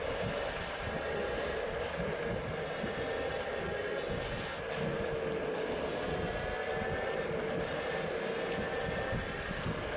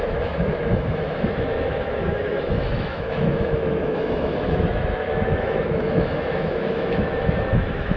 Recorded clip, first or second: first